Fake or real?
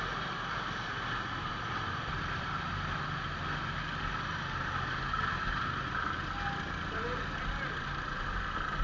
real